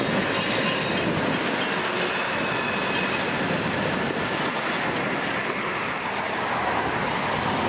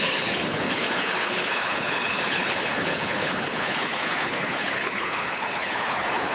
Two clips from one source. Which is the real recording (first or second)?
first